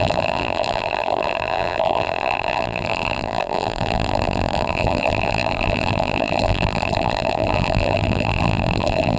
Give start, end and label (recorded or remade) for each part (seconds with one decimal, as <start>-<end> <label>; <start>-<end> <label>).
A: 0.0-9.2 remade